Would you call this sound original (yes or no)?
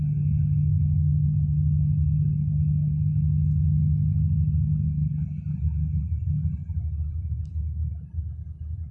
yes